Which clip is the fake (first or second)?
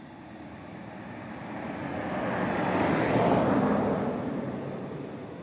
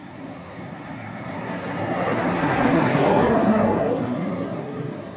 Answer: second